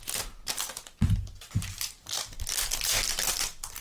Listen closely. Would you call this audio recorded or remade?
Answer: recorded